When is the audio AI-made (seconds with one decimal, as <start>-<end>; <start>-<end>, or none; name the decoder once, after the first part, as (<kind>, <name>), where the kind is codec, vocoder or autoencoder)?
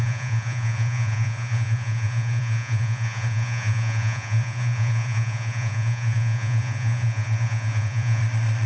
0.0-8.2 (vocoder, Vocos)